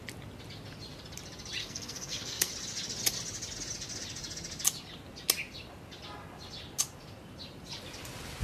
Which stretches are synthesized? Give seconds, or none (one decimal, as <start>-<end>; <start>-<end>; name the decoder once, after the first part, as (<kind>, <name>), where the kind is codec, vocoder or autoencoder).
1.6-2.5 (codec, SNAC)

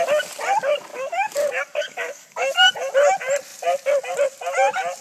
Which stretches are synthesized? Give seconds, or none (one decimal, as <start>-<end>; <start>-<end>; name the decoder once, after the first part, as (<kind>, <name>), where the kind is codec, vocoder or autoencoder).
0.9-2.7 (codec, DAC)

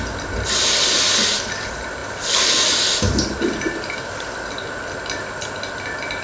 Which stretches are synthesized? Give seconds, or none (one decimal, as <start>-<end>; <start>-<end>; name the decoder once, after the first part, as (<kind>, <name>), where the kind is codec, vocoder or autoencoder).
none

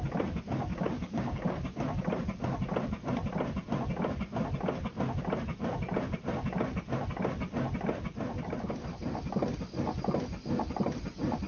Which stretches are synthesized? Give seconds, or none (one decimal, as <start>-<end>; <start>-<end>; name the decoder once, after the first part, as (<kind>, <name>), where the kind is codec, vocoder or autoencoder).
0.7-1.5 (codec, DAC)